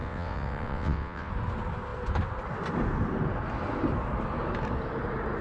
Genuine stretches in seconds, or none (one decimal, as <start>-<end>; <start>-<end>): 1.3-5.4